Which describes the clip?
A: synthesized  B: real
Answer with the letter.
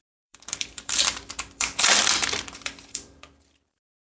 A